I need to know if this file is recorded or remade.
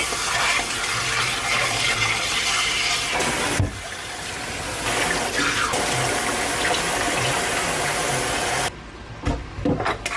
recorded